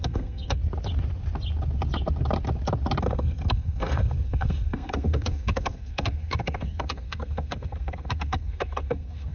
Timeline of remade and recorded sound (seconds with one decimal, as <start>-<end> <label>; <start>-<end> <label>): 0.0-0.6 remade; 0.6-3.0 recorded; 3.0-9.3 remade